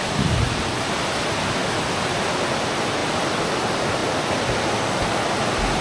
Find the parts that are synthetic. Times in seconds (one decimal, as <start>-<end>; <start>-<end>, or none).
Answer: none